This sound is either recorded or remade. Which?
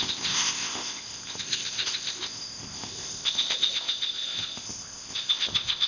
remade